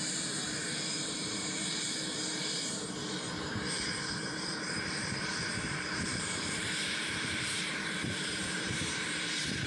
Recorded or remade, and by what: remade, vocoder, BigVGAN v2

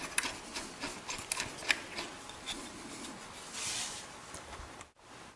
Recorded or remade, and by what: recorded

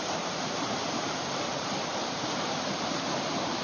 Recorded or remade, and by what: remade, vocoder, BigVGAN v2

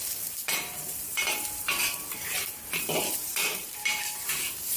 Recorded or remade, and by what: remade, vocoder, BigVGAN v2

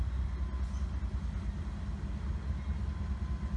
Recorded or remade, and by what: recorded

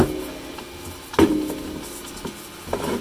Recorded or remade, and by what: recorded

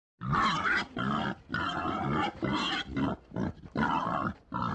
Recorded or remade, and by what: recorded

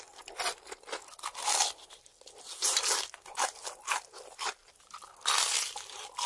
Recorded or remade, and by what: recorded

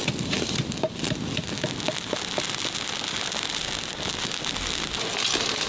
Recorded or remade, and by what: recorded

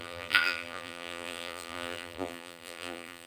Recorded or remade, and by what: remade, vocoder, BigVGAN v2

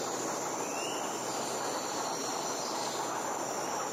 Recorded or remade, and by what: recorded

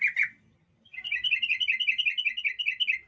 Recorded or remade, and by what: recorded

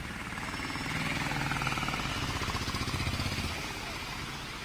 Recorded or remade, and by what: recorded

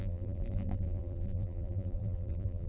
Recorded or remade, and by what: remade, vocoder, BigVGAN v2